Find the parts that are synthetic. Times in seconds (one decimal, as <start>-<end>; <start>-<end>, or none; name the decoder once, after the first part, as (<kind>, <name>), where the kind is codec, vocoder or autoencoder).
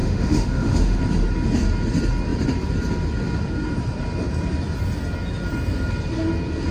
0.0-1.0 (autoencoder, DAC-VAE)